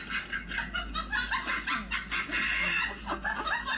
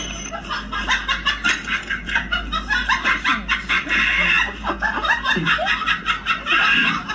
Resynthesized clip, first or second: second